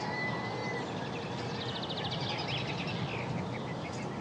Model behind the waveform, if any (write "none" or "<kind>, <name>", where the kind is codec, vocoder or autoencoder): none